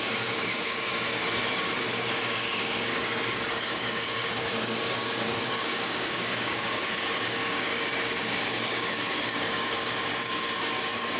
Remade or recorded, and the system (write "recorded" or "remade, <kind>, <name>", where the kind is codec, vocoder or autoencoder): remade, codec, DAC